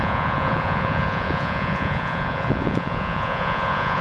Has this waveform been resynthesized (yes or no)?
yes